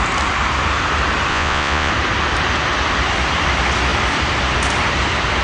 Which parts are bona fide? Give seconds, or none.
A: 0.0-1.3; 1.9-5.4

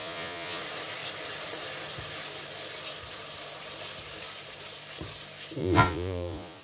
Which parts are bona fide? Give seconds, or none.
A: 0.6-5.6

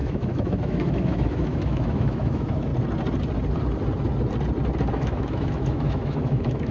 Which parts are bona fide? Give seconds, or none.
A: 2.7-4.9

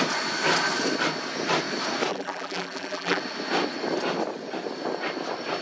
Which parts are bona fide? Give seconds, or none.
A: 0.0-2.1; 3.2-5.6

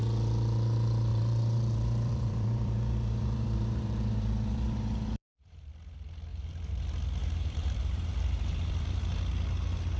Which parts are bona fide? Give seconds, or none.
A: 0.0-1.1; 5.7-6.3; 6.8-7.2; 9.0-10.0

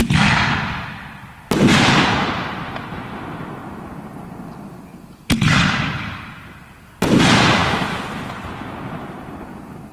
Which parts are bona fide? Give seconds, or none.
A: 0.0-9.9

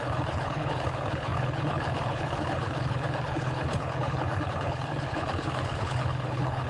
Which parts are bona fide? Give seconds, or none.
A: none